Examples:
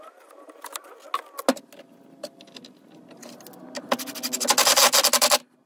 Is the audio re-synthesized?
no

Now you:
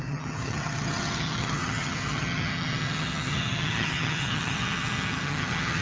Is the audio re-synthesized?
yes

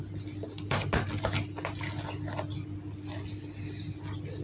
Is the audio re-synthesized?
no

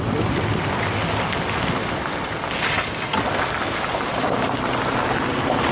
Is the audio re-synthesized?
no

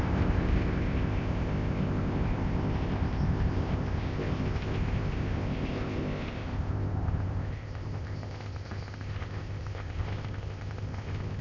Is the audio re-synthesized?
yes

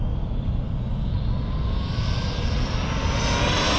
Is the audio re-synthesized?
no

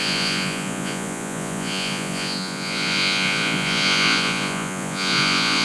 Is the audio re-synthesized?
yes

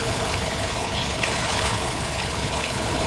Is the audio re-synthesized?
yes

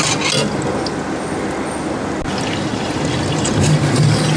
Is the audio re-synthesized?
no